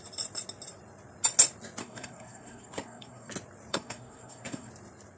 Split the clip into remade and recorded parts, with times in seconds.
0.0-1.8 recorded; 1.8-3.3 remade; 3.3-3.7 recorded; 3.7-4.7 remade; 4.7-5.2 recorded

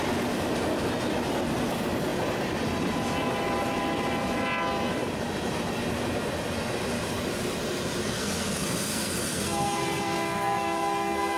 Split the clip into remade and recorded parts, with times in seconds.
0.0-8.0 recorded; 8.0-11.4 remade

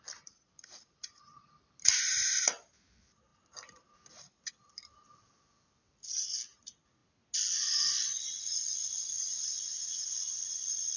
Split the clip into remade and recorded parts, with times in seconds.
0.0-3.3 remade; 3.3-4.5 recorded; 4.5-7.0 remade; 7.0-7.5 recorded; 7.5-11.0 remade

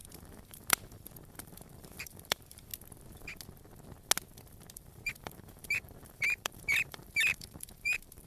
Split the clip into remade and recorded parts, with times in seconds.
0.0-2.7 remade; 2.7-4.7 recorded; 4.7-8.3 remade